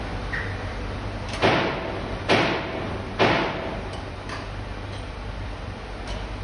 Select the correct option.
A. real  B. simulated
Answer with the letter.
A